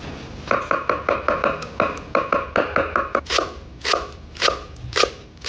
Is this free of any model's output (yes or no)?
yes